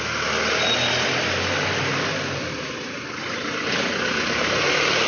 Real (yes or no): yes